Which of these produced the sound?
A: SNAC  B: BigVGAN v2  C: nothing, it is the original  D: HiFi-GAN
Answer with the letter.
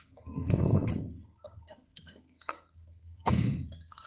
A